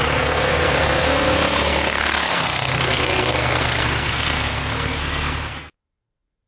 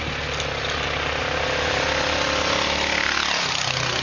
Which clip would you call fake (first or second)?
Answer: first